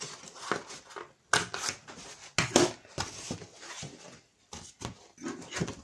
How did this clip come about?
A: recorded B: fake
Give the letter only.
A